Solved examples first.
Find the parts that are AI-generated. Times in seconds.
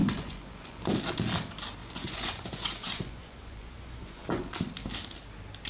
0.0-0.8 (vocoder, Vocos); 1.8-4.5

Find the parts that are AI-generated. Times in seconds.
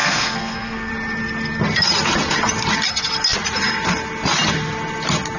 0.0-0.9 (codec, SNAC)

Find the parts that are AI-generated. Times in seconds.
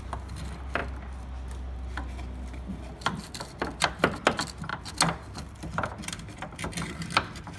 none